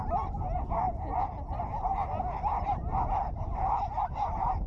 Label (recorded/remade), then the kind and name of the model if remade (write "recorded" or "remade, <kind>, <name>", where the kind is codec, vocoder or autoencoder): recorded